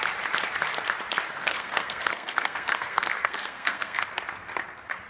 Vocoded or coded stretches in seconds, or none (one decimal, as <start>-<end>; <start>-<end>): 1.4-4.0